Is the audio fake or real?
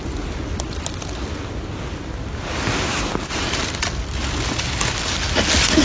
real